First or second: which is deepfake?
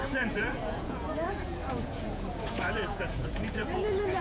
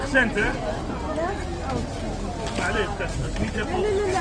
first